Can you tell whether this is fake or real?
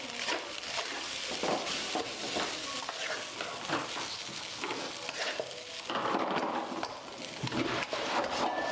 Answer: real